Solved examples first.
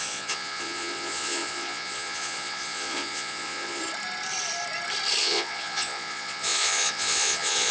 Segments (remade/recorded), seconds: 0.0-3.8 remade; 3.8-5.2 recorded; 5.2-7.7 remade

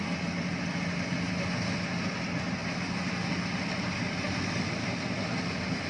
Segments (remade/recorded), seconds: 0.0-5.9 recorded

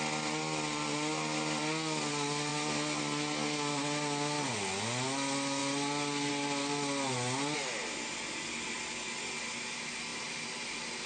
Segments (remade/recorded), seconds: 0.0-11.1 recorded

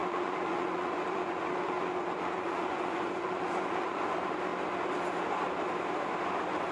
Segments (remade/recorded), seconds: 0.0-4.0 remade; 4.0-6.7 recorded

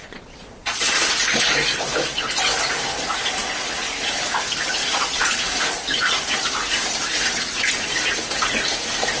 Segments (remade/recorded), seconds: 0.0-0.8 remade; 0.8-4.8 recorded; 4.8-5.3 remade; 5.3-9.2 recorded

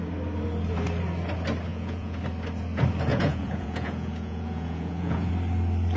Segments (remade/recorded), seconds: 0.0-1.7 recorded; 1.7-2.2 remade; 2.2-3.1 recorded; 3.1-5.3 remade; 5.3-6.0 recorded

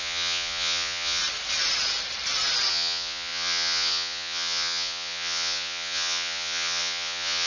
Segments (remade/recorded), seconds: 0.0-1.2 remade; 1.2-2.7 recorded; 2.7-7.5 remade